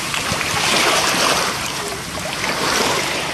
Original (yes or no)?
no